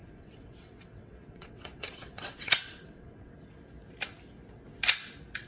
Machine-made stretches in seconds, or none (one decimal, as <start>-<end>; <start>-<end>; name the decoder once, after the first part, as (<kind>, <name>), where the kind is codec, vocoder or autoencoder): 0.0-3.3 (vocoder, WaveNeXt)